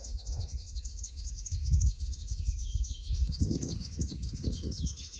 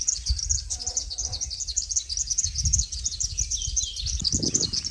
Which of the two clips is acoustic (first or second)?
second